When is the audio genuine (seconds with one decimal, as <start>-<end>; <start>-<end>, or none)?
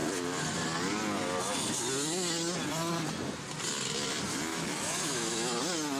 0.0-4.5; 5.6-6.0